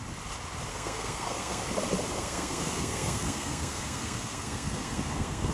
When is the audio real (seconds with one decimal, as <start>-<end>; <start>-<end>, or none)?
0.0-0.7; 1.6-2.1